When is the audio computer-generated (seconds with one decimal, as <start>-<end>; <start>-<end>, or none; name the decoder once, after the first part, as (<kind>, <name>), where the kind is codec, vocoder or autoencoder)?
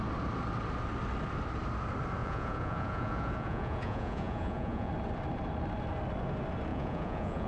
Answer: 2.2-4.9 (vocoder, Vocos); 6.7-7.5